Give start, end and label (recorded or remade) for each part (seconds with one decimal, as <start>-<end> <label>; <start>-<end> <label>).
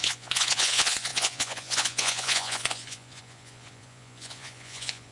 0.0-5.1 remade